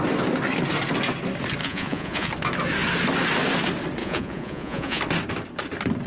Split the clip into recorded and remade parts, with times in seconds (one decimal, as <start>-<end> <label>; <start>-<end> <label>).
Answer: 0.0-1.6 recorded; 1.6-2.3 remade; 2.3-4.0 recorded; 4.0-5.0 remade; 5.0-6.1 recorded